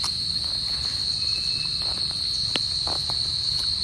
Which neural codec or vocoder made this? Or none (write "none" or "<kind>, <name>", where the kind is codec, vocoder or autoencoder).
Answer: none